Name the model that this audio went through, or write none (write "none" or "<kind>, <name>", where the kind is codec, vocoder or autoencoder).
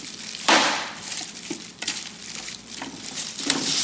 vocoder, BigVGAN v2